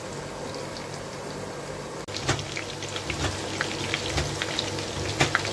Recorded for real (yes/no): yes